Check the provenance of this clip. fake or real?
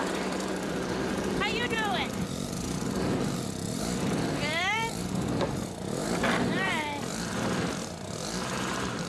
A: fake